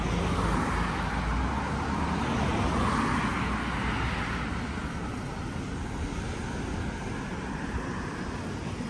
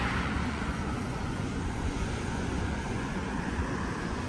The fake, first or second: second